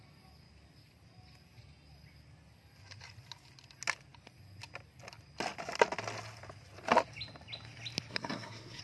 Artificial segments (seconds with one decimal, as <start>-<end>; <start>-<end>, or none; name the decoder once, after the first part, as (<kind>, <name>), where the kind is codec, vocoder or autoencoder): 8.1-8.8 (codec, SNAC)